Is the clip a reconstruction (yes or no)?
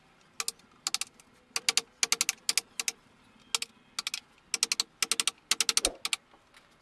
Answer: no